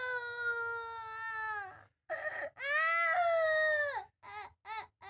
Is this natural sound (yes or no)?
yes